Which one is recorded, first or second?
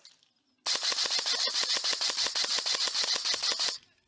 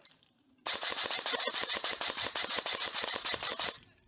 first